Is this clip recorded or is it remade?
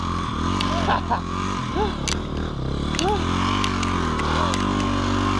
recorded